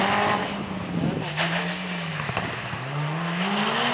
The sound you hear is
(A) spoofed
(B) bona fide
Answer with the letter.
B